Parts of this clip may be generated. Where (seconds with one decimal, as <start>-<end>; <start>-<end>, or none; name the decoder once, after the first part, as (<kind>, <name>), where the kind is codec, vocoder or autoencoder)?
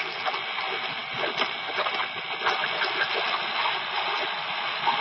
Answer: none